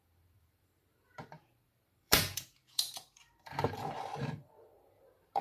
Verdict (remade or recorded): remade